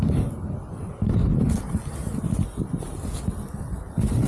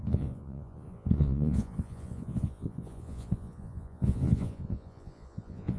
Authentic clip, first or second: first